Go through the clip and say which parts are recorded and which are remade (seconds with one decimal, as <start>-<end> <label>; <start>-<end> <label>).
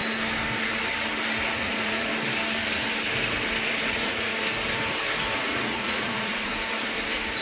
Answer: 0.0-1.6 recorded; 1.6-2.1 remade; 2.1-3.9 recorded; 3.9-4.3 remade; 4.3-5.4 recorded; 5.4-6.5 remade; 6.5-7.4 recorded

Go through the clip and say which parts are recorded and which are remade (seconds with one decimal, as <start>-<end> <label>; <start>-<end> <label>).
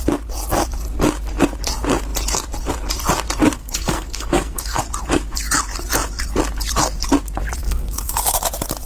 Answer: 0.0-3.6 recorded; 3.6-4.8 remade; 4.8-7.6 recorded; 7.6-8.4 remade; 8.4-8.9 recorded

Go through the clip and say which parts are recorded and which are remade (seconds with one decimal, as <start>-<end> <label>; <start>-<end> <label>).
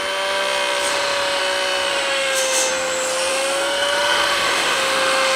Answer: 0.0-0.9 recorded; 0.9-1.4 remade; 1.4-1.9 recorded; 1.9-2.7 remade; 2.7-3.3 recorded; 3.3-5.4 remade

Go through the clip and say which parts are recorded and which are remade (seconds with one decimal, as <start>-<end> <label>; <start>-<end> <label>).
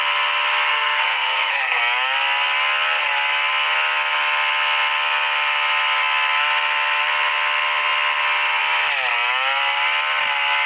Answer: 0.0-0.7 recorded; 0.7-1.8 remade; 1.8-10.7 recorded